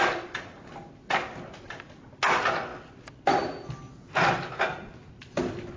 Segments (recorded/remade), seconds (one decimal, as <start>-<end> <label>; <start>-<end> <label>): 0.0-5.8 recorded